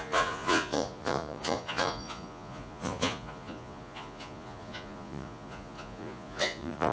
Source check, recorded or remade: remade